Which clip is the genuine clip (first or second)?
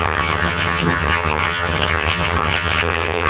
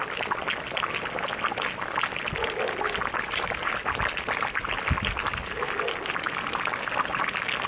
second